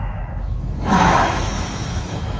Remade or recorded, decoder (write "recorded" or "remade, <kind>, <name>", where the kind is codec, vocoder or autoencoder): remade, autoencoder, DAC-VAE